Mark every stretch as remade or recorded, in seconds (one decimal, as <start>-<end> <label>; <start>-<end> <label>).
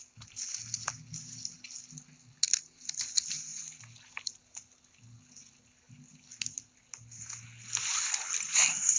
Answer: 0.0-9.0 recorded